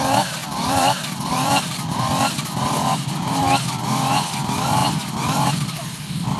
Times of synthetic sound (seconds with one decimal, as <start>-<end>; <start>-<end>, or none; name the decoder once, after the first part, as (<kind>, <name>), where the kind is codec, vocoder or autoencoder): 0.4-3.4 (vocoder, BigVGAN v2)